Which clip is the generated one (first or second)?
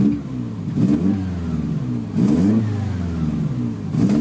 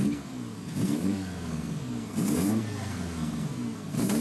second